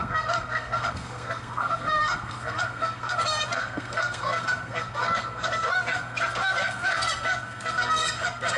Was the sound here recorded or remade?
remade